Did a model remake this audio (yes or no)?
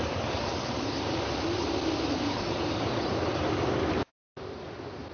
no